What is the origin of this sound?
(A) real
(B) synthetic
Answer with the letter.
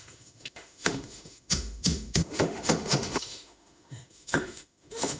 B